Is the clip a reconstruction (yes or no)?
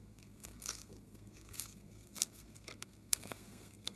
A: yes